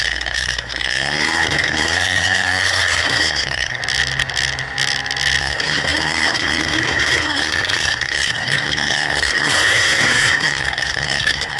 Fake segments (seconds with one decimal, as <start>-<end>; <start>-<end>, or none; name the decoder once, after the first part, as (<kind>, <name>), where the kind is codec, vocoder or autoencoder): 0.0-3.8 (codec, SNAC); 5.4-11.6